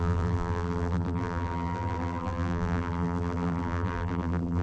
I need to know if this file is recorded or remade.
remade